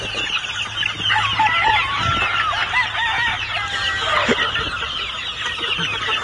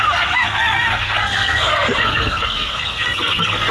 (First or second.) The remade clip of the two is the second